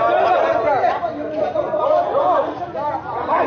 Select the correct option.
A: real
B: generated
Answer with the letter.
A